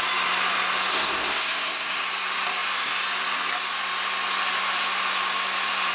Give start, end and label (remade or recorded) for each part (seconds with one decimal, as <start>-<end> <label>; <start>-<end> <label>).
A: 0.0-0.9 recorded; 0.9-2.0 remade; 2.0-5.9 recorded